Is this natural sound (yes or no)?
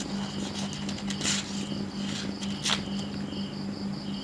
yes